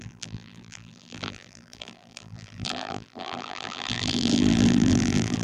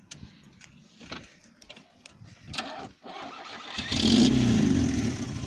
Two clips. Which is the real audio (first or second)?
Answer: second